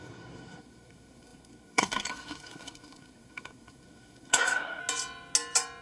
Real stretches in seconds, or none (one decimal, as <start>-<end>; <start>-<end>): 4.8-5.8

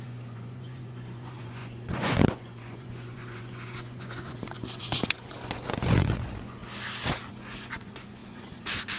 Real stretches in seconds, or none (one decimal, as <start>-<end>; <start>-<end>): 6.6-7.3

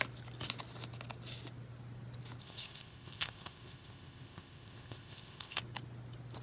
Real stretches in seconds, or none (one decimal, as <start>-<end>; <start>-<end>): 0.0-2.4; 5.6-6.4

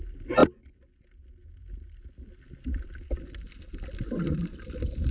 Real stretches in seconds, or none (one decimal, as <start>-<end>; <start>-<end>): 0.0-5.1

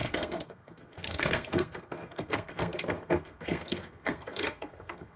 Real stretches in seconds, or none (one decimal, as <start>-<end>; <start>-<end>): none

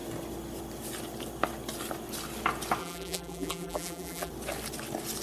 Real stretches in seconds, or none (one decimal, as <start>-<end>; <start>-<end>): 0.0-2.8; 4.3-5.2

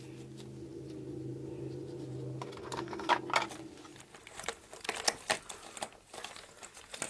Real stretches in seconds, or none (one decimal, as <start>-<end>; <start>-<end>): 0.0-2.6; 3.1-7.1

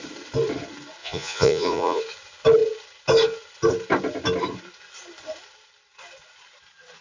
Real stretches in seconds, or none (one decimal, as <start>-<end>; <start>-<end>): 0.0-1.0; 2.0-7.0